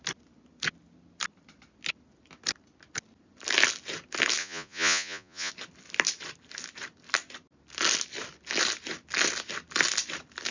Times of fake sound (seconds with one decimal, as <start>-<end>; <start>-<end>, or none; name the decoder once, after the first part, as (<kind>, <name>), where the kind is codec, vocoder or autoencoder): 4.4-5.5 (vocoder, Vocos)

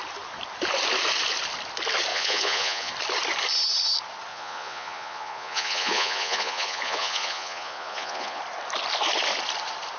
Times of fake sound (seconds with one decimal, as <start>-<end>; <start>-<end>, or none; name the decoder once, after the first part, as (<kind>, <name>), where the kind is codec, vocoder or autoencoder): 2.1-2.9 (vocoder, Vocos); 4.3-8.4

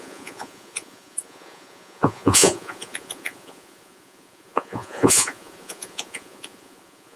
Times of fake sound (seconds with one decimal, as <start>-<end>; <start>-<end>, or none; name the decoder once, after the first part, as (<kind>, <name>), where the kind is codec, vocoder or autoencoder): 0.0-7.2 (vocoder, Vocos)

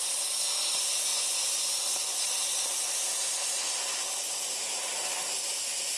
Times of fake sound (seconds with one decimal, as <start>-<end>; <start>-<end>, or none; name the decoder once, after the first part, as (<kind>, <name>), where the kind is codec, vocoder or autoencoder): 1.1-2.2 (vocoder, Vocos)

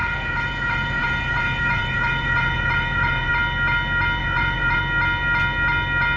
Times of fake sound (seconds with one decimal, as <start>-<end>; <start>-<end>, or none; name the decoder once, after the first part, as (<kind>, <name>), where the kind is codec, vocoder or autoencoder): 0.0-3.3 (vocoder, Vocos); 4.2-4.8

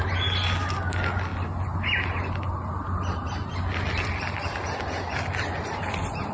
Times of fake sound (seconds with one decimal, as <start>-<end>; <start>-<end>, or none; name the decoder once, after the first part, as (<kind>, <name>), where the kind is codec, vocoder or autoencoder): none

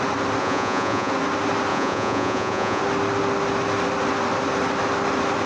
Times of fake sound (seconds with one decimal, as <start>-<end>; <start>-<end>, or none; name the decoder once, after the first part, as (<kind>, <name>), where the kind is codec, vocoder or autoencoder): 0.4-1.1 (vocoder, Vocos); 1.7-2.8